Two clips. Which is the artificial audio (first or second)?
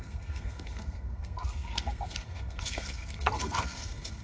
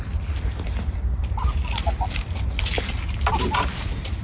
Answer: first